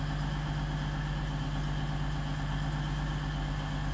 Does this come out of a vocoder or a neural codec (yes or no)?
no